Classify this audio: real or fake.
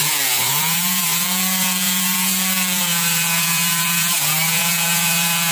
fake